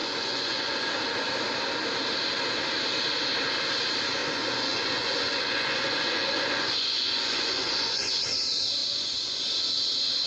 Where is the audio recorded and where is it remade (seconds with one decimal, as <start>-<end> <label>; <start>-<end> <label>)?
0.0-0.9 remade; 0.9-4.2 recorded; 4.2-8.2 remade; 8.2-8.8 recorded; 8.8-9.4 remade; 9.4-10.3 recorded